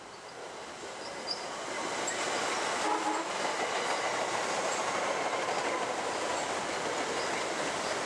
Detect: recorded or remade recorded